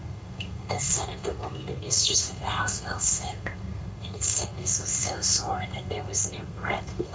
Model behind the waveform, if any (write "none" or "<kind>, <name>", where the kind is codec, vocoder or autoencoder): codec, SNAC